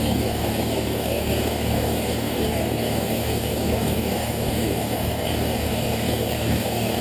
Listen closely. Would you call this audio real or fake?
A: fake